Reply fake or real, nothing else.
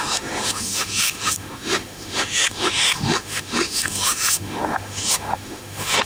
fake